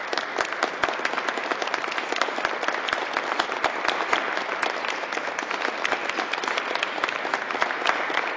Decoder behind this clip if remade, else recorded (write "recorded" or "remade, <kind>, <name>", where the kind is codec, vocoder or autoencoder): remade, vocoder, BigVGAN v2